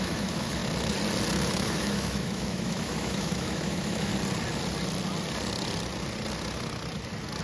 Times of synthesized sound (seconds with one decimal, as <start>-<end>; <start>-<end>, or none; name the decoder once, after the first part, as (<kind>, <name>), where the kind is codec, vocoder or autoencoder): 0.0-0.6 (autoencoder, DAC-VAE); 1.5-4.1

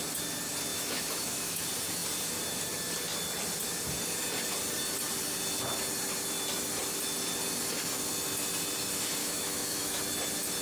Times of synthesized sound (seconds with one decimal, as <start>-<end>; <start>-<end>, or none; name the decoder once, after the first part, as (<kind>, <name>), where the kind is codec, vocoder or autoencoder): 0.7-1.6 (autoencoder, DAC-VAE); 9.2-10.0

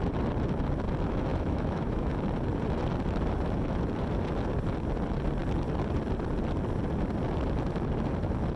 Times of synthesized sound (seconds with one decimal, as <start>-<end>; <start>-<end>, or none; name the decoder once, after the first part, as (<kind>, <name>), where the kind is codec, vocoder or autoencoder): 1.3-2.1 (autoencoder, DAC-VAE)

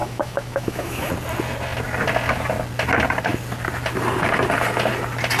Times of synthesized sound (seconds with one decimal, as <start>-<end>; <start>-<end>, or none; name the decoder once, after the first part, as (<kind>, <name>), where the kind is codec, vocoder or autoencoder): 0.0-1.1 (autoencoder, DAC-VAE)

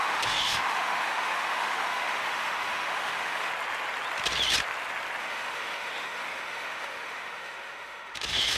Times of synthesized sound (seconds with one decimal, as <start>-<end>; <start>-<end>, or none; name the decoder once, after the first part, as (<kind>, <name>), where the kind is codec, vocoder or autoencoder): 0.0-3.5 (autoencoder, DAC-VAE); 5.2-8.6

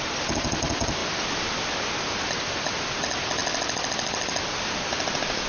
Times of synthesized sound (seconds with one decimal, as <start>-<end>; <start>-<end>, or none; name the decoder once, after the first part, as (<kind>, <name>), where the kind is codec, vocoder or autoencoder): none

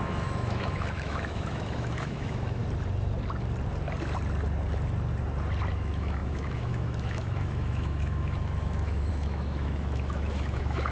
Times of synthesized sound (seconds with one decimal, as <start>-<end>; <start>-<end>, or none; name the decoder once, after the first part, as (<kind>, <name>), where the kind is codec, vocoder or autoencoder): 0.0-2.6 (autoencoder, DAC-VAE); 5.7-10.9